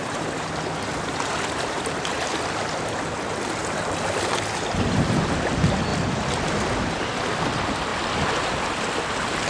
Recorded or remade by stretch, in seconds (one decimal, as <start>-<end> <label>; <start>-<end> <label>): 0.0-9.5 recorded